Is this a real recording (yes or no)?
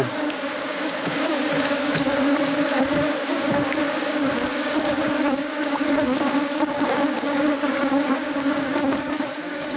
no